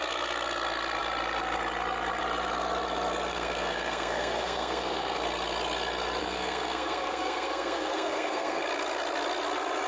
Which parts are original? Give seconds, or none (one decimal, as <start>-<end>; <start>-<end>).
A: 0.0-3.3; 5.2-6.2; 8.6-9.9